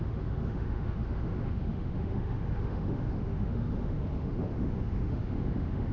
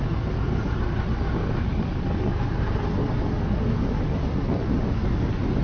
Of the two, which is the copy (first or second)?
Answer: first